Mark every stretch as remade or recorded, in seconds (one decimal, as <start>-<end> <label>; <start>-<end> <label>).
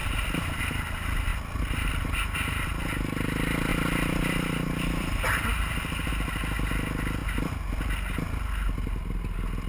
0.0-0.6 remade; 0.6-1.3 recorded; 1.3-1.9 remade; 1.9-3.7 recorded; 3.7-6.1 remade; 6.1-9.7 recorded